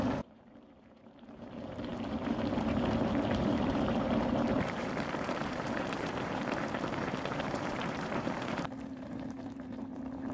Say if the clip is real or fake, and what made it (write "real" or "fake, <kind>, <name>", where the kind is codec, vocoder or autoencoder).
fake, vocoder, BigVGAN v2